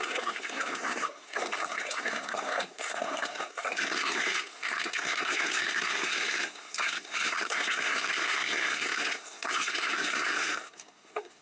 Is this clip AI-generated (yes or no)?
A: yes